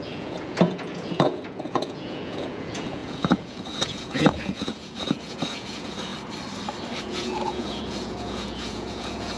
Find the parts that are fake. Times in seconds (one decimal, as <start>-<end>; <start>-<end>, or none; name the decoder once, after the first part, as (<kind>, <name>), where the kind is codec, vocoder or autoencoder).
0.0-6.1 (vocoder, Vocos); 7.0-9.4